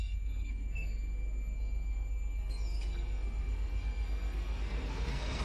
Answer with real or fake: fake